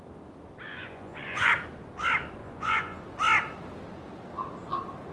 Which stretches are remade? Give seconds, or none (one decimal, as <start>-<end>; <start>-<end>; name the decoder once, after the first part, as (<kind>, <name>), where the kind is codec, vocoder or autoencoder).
0.7-1.5 (vocoder, Vocos); 2.4-3.0